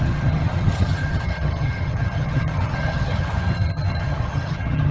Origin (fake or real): fake